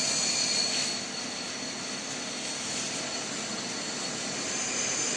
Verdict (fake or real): real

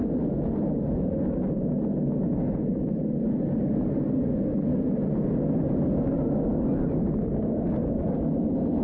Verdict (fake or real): real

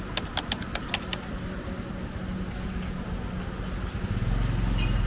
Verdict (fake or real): real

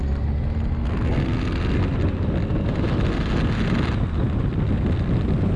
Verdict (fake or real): real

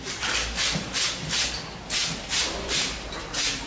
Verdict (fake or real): real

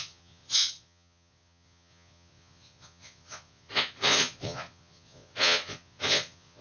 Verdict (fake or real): fake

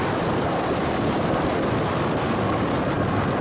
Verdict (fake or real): real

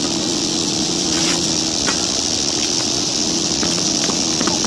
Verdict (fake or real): fake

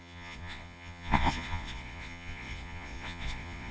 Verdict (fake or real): fake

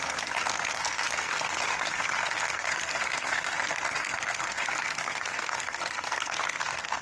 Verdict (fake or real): fake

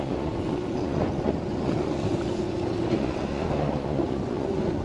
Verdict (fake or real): fake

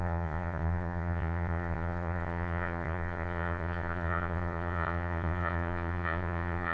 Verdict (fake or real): fake